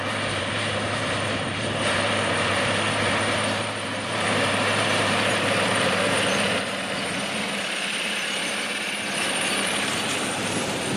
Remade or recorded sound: remade